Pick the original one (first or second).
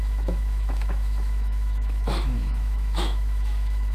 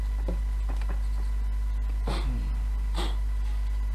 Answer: second